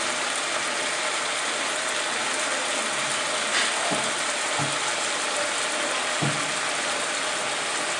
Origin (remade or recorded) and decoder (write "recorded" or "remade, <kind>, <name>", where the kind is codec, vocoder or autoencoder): recorded